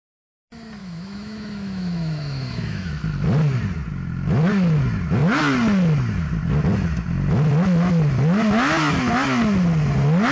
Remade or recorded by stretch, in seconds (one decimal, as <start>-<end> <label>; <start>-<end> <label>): 0.0-0.8 recorded; 0.8-2.9 remade; 2.9-10.3 recorded